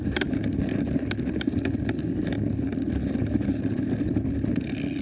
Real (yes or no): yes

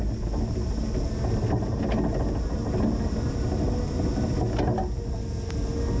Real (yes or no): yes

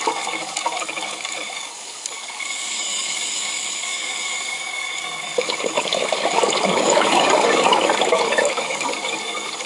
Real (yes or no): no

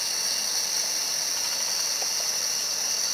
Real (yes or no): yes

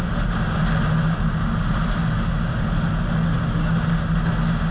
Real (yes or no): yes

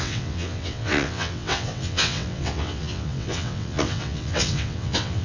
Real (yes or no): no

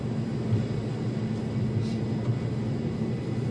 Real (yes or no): yes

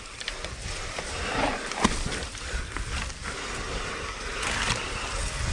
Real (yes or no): yes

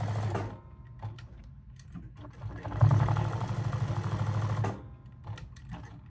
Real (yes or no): yes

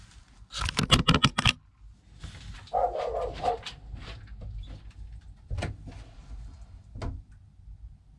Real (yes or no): yes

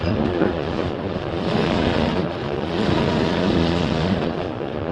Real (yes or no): no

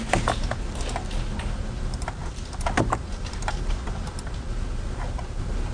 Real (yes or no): yes